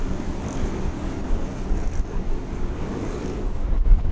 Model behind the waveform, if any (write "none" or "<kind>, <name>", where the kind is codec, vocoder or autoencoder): codec, DAC